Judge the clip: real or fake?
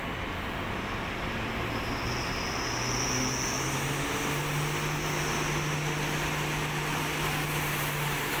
real